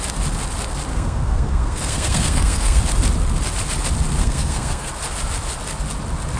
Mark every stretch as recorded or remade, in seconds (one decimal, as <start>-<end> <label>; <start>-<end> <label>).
0.0-0.9 recorded; 0.9-2.8 remade; 2.8-4.2 recorded; 4.2-4.9 remade; 4.9-6.4 recorded